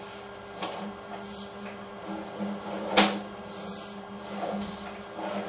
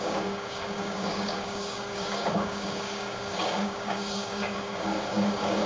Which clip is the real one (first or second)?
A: first